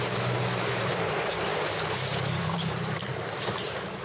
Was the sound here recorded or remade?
remade